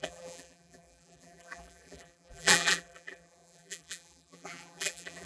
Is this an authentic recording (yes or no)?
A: no